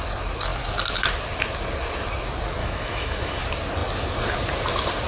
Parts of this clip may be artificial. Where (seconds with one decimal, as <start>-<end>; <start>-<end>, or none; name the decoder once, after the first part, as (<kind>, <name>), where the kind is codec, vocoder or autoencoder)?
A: 2.6-3.4 (autoencoder, DAC-VAE)